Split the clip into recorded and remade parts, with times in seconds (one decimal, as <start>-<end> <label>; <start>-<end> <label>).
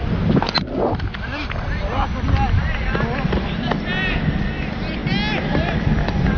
0.0-6.4 recorded